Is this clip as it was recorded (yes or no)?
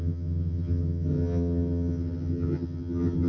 no